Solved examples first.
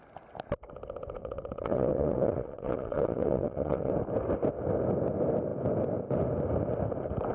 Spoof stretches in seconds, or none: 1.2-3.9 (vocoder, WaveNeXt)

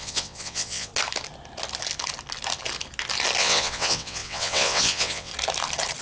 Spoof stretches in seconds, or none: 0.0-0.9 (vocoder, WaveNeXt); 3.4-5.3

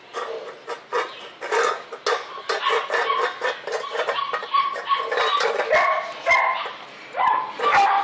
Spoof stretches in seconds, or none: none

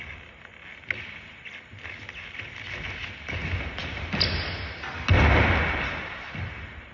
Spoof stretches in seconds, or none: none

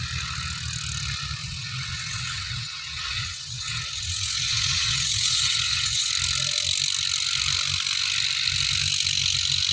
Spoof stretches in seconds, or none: 1.4-6.1 (vocoder, WaveNeXt)

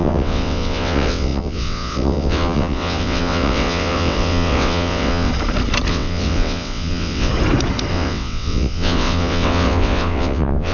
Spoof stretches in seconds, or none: 0.0-5.3 (vocoder, WaveNeXt); 5.9-7.3; 7.9-10.7

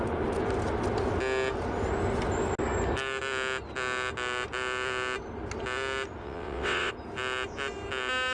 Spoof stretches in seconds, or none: 6.2-6.9 (vocoder, WaveNeXt)